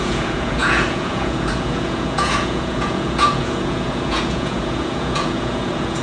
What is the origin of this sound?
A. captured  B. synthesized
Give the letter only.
B